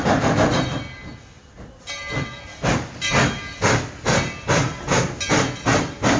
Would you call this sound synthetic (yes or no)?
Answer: no